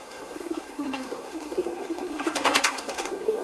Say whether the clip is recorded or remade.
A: remade